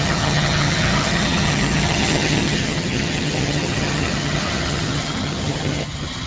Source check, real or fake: fake